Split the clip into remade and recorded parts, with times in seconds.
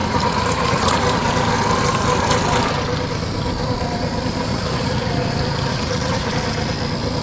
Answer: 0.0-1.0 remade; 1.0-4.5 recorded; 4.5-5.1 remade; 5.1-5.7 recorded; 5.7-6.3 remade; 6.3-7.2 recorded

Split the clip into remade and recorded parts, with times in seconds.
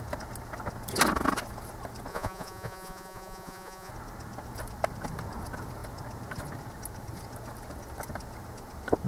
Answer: 0.0-2.1 recorded; 2.1-3.9 remade; 3.9-9.1 recorded